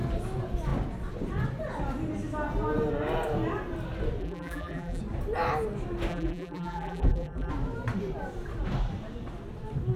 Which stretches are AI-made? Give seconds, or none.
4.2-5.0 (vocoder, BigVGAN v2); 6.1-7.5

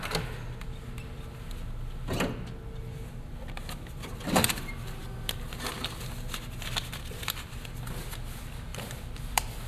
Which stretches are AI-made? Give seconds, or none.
8.7-9.7 (vocoder, BigVGAN v2)

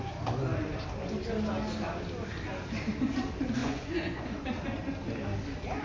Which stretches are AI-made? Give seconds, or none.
3.6-4.4 (vocoder, Vocos)

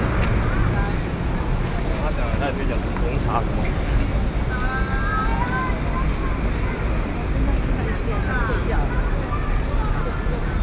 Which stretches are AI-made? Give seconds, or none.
none